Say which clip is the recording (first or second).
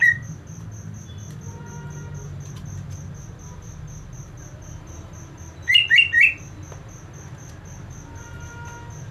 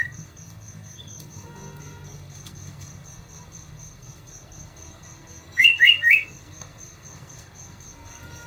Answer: first